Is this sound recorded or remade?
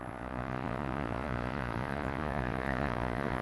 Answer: remade